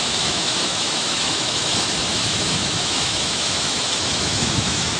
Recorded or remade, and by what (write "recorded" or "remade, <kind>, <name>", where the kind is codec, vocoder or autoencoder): remade, autoencoder, DAC-VAE